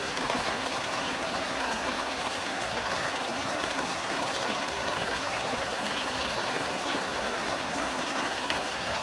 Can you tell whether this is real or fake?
fake